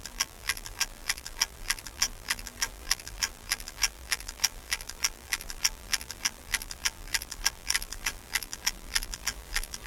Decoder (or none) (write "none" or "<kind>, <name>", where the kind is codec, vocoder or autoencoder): vocoder, BigVGAN v2